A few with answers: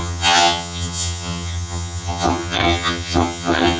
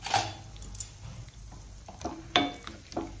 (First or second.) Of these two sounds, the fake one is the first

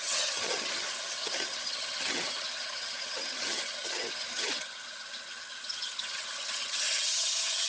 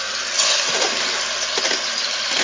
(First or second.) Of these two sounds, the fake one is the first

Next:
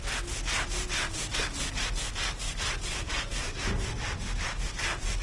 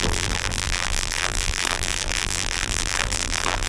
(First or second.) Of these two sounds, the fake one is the second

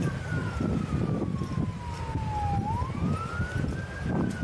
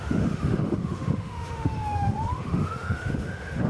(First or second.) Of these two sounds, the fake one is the second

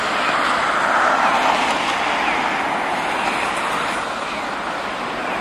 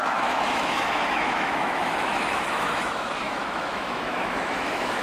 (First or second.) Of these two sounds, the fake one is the second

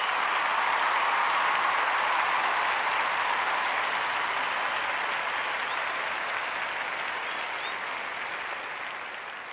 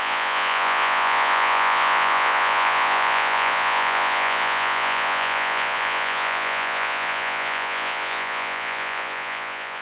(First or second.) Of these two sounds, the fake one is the second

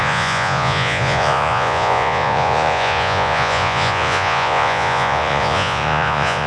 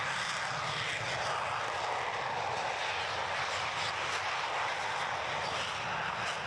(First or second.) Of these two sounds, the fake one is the first